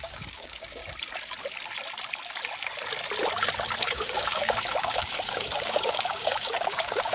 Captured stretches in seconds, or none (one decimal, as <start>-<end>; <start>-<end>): 0.8-3.8